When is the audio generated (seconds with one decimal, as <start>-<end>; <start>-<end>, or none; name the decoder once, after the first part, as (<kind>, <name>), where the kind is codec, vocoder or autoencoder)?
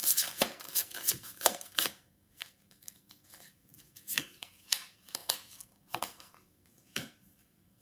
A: 0.0-7.8 (codec, SNAC)